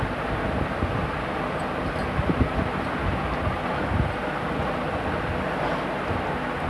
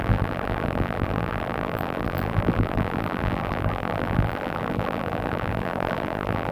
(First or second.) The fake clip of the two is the second